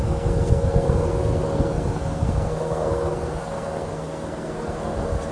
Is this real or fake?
fake